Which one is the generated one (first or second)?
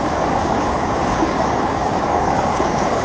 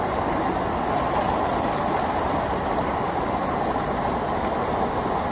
first